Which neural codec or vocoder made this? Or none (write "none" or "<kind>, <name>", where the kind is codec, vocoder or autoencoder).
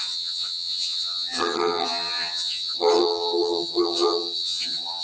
vocoder, HiFi-GAN